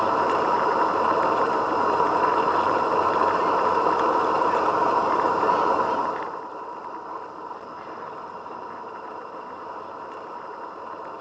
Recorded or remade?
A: remade